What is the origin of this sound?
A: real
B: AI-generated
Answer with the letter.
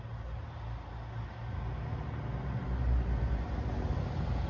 A